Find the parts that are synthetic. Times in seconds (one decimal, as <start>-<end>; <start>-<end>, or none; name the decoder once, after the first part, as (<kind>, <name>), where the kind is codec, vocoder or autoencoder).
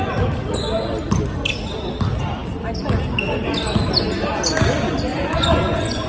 5.1-6.1 (vocoder, Vocos)